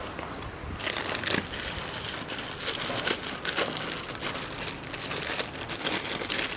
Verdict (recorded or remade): recorded